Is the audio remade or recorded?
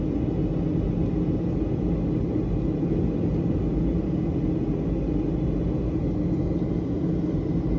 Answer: recorded